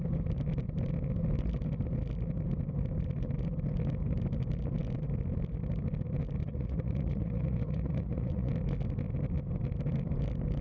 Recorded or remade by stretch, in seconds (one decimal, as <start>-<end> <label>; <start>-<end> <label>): 0.0-6.4 recorded; 6.4-8.5 remade; 8.5-10.6 recorded